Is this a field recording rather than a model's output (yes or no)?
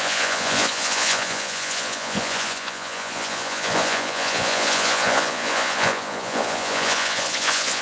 no